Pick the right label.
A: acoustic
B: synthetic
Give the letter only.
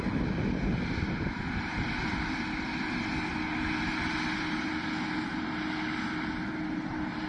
A